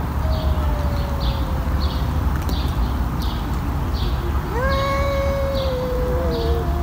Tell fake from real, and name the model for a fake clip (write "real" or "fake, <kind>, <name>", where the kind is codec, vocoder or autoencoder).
real